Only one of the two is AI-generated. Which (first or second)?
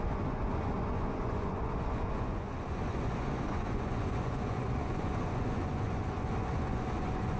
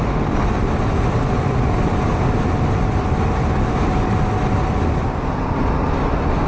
first